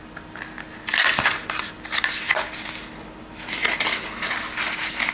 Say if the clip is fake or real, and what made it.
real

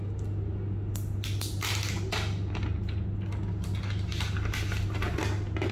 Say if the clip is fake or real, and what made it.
real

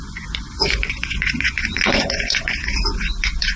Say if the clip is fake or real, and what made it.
fake, vocoder, Vocos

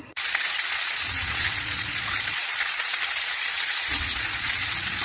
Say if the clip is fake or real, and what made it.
fake, vocoder, Vocos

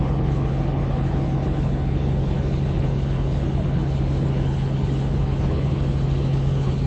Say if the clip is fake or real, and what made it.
fake, codec, HILCodec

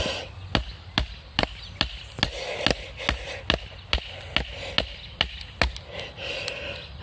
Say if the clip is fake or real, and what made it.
real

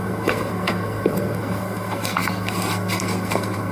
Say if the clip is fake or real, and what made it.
fake, codec, SNAC